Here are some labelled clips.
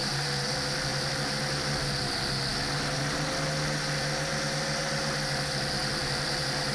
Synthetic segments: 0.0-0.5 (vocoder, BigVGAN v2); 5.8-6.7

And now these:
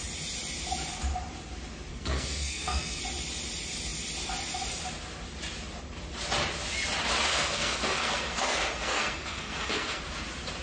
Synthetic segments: 1.9-3.0 (codec, SNAC); 7.3-10.0

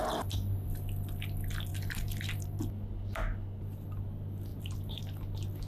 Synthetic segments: 1.7-2.6 (vocoder, BigVGAN v2); 4.5-5.0

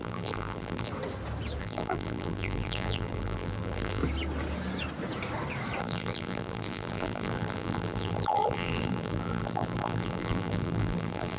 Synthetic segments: 0.0-0.9 (vocoder, BigVGAN v2); 1.6-4.0; 5.8-11.4

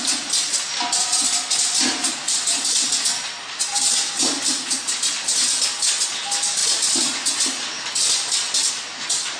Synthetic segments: none

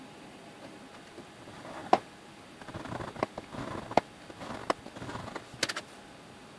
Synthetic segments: none